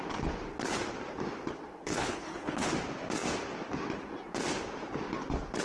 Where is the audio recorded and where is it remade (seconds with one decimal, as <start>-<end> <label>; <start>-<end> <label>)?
0.0-1.8 recorded; 1.8-2.7 remade; 2.7-5.6 recorded

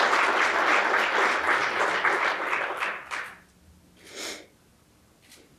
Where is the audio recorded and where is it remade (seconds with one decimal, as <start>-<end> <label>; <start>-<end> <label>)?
0.0-5.6 recorded